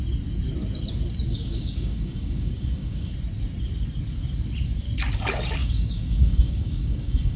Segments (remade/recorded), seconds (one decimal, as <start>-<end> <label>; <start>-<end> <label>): 0.0-1.3 recorded; 1.3-3.1 remade; 3.1-5.6 recorded; 5.6-7.4 remade